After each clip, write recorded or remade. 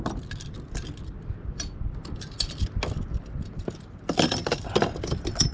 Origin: recorded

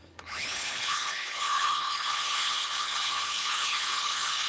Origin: remade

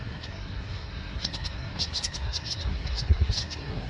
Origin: remade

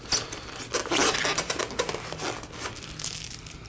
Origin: recorded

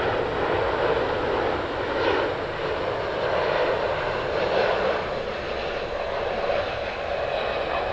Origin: recorded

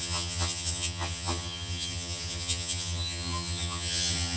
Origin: remade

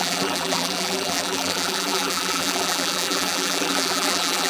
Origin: remade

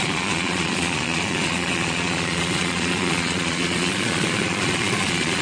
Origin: remade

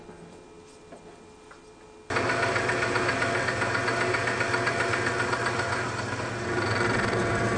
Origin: recorded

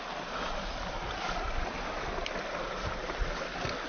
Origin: recorded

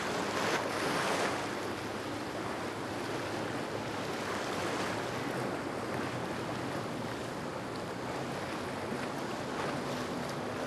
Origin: recorded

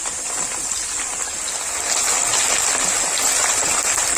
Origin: recorded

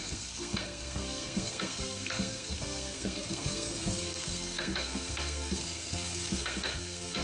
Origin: remade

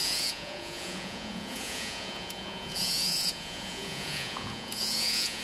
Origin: remade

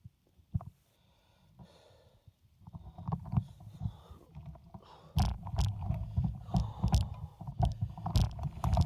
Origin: recorded